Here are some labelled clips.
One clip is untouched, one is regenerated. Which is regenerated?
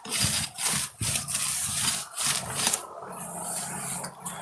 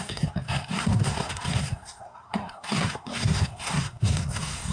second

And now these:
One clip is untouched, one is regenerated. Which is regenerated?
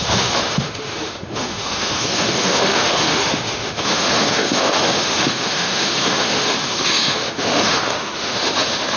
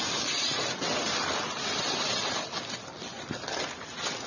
first